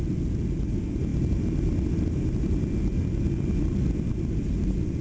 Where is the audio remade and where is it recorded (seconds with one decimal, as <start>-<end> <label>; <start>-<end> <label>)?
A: 0.0-5.0 recorded